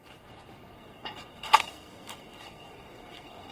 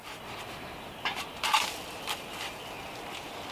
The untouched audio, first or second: second